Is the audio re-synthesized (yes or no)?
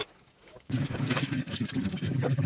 yes